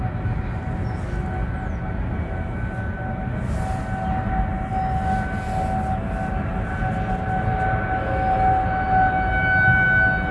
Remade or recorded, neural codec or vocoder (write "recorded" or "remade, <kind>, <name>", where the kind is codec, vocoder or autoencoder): recorded